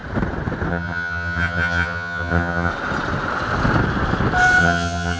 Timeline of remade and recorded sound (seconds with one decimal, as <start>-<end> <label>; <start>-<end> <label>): 0.0-0.7 recorded; 0.7-2.7 remade; 2.7-4.6 recorded; 4.6-5.2 remade